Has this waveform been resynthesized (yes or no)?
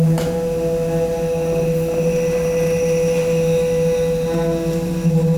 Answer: no